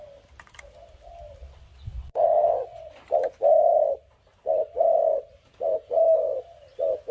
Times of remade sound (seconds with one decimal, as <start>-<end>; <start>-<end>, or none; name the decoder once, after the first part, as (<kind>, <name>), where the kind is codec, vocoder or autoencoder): 1.4-2.9 (vocoder, WaveNeXt)